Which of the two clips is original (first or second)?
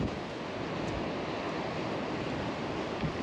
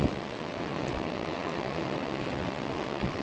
first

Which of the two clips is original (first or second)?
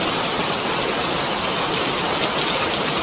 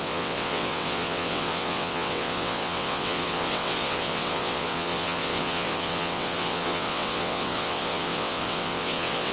first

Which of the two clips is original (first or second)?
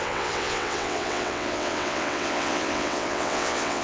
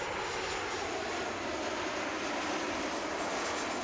second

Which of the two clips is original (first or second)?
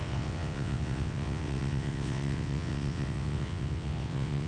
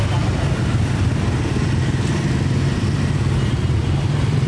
second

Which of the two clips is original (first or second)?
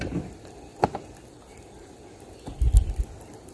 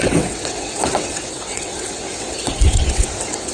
first